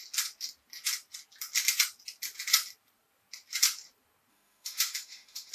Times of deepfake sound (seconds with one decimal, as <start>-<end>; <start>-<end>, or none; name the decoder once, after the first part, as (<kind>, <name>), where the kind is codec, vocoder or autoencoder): 4.3-5.5 (autoencoder, DAC-VAE)